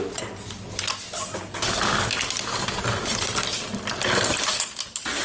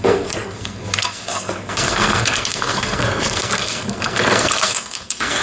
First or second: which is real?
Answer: first